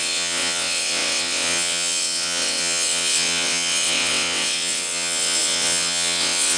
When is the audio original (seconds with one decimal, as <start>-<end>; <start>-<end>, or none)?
none